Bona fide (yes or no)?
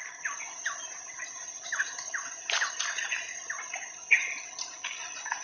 yes